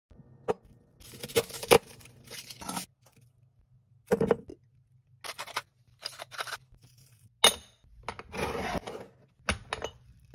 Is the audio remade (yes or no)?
no